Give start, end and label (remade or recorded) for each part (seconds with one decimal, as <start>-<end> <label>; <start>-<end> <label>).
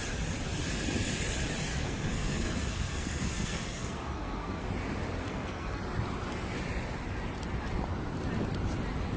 0.0-1.7 recorded; 1.7-4.7 remade; 4.7-5.2 recorded; 5.2-5.8 remade; 5.8-9.2 recorded